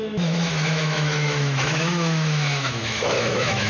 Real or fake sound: fake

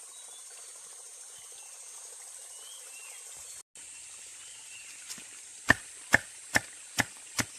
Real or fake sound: real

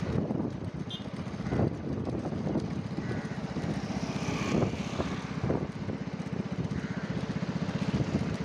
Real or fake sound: real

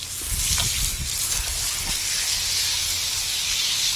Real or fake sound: real